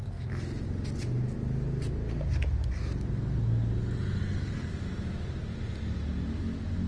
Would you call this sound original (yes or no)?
yes